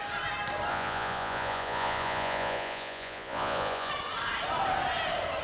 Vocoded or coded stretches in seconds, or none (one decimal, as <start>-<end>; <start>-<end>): 0.7-3.9